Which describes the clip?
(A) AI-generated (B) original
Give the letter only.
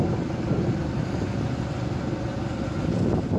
B